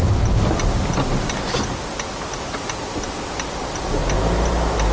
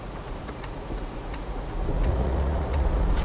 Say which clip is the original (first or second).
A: first